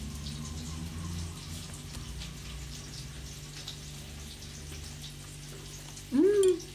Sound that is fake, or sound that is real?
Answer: real